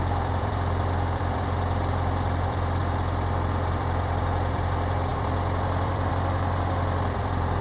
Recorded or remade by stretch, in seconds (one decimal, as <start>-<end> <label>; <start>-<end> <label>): 0.0-2.8 remade; 2.8-3.7 recorded; 3.7-7.6 remade